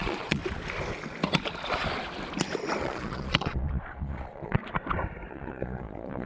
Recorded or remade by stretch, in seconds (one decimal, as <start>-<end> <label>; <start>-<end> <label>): 0.0-0.4 remade; 0.4-2.8 recorded; 2.8-4.6 remade; 4.6-5.3 recorded; 5.3-6.3 remade